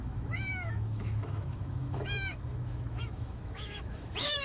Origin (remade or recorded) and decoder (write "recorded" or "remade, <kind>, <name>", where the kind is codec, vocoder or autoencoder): remade, autoencoder, DAC-VAE